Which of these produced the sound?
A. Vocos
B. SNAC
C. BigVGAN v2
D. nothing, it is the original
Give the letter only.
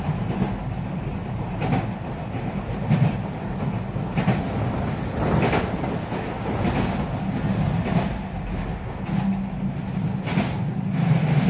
D